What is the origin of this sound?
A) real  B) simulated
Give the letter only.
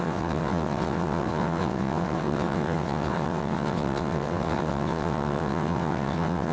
B